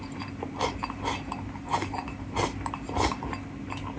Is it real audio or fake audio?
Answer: real